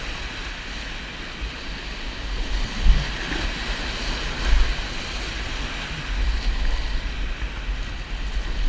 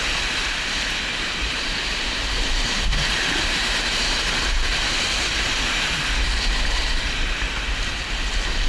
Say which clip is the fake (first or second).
second